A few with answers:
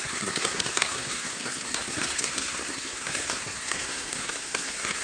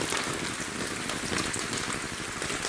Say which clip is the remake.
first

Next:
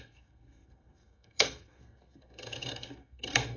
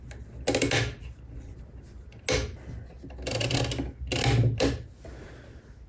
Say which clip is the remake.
first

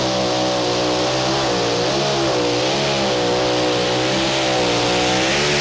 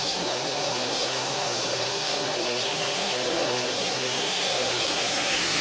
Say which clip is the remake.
second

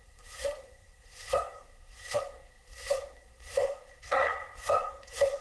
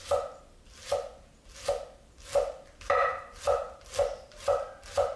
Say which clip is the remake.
first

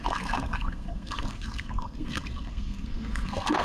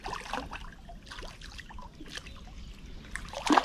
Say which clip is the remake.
first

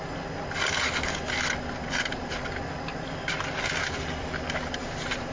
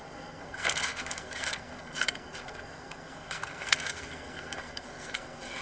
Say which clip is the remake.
second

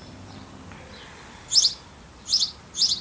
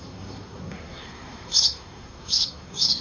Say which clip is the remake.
second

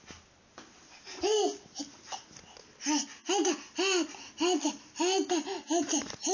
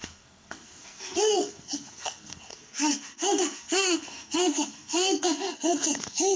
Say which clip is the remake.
second